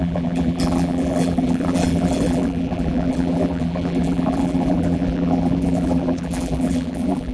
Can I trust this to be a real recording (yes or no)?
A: no